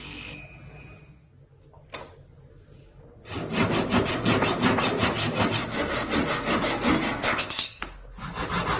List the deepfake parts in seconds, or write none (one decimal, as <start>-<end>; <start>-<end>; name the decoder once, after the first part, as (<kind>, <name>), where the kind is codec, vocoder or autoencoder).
7.2-7.8 (codec, ZipCodec)